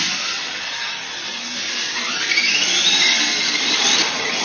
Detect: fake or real fake